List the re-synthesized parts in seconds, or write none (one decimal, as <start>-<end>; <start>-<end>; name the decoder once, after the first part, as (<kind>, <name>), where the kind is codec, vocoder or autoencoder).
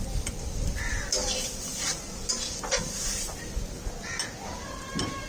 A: none